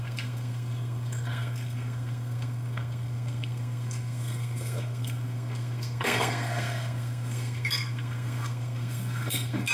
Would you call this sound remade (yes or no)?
yes